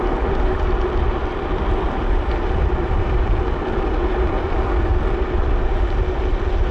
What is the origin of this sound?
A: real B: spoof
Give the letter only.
B